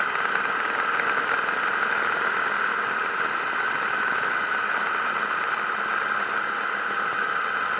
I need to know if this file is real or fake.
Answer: real